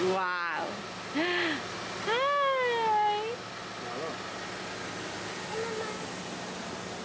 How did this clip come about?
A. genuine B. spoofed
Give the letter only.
A